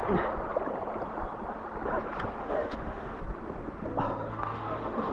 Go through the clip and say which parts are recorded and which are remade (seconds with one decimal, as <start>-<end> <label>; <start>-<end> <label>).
0.0-2.4 recorded; 2.4-3.2 remade; 3.2-4.3 recorded; 4.3-5.1 remade